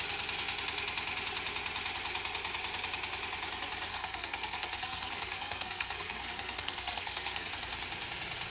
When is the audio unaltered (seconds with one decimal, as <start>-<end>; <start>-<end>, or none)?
0.0-3.9; 7.5-8.5